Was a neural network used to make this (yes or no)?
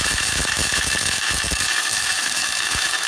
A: yes